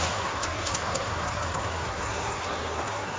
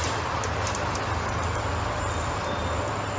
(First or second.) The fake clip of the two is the first